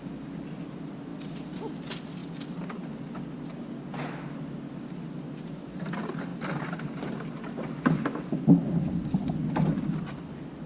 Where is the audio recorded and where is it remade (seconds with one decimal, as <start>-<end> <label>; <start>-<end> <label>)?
0.0-10.7 recorded